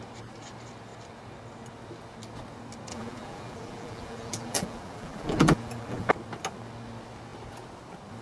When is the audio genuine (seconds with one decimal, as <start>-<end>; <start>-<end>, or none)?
0.0-2.9; 6.1-8.2